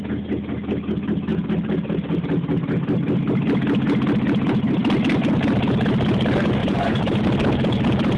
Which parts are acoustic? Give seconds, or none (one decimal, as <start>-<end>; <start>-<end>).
0.0-6.6; 7.2-8.2